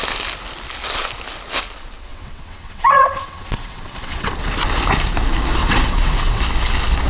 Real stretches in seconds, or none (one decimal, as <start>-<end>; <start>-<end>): 0.0-2.1; 4.3-5.6; 6.4-7.1